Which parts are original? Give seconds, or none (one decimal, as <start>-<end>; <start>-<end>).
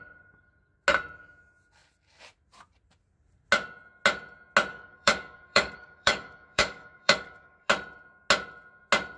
0.0-4.7; 7.7-9.2